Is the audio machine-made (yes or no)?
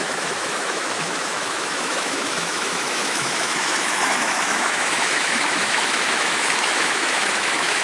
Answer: yes